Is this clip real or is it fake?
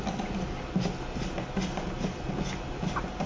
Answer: real